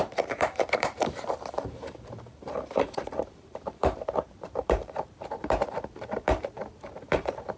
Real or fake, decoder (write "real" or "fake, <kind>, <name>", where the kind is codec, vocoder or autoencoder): fake, vocoder, BigVGAN v2